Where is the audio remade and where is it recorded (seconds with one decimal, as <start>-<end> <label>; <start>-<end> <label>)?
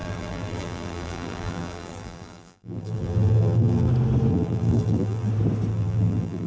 0.0-3.9 remade; 3.9-4.3 recorded; 4.3-5.3 remade; 5.3-5.7 recorded; 5.7-6.5 remade